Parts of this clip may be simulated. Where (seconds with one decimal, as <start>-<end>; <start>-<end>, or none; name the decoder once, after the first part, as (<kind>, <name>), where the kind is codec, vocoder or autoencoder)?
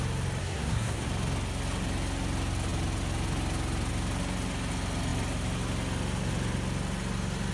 0.4-1.1 (codec, SNAC)